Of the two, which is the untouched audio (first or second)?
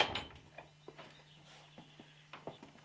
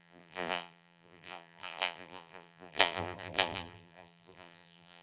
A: first